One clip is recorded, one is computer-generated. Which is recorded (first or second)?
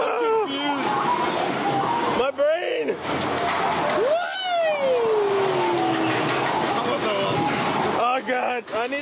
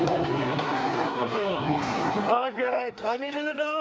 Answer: first